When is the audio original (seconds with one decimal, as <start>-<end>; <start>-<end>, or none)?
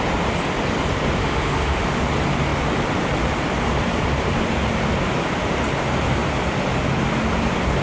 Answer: 0.0-1.2; 2.0-7.8